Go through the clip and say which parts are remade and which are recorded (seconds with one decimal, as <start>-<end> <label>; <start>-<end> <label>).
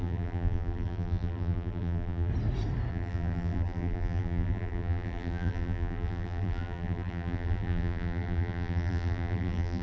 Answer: 0.0-2.3 remade; 2.3-2.9 recorded; 2.9-9.8 remade